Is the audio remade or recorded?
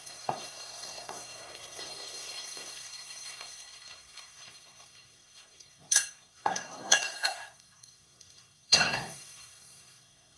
remade